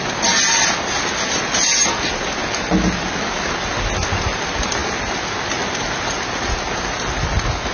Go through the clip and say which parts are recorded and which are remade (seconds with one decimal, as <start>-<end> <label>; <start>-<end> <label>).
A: 0.0-7.7 recorded